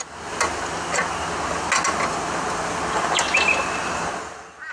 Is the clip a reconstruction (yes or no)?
no